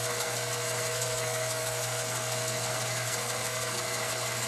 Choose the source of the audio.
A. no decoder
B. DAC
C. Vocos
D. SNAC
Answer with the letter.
D